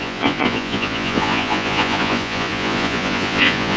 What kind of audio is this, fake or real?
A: fake